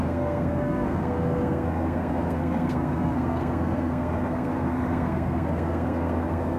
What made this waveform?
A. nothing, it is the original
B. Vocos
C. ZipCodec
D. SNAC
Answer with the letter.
D